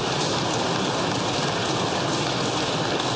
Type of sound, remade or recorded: recorded